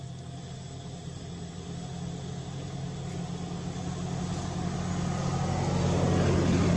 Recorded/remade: recorded